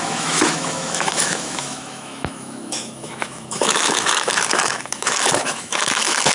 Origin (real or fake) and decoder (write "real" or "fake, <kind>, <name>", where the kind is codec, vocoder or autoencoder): fake, autoencoder, DAC-VAE